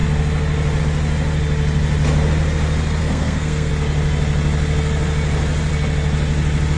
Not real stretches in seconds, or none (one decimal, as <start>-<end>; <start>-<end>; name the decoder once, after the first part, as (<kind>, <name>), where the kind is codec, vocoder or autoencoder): 3.0-3.7 (codec, SNAC)